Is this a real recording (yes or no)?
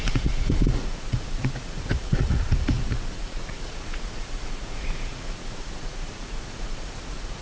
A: no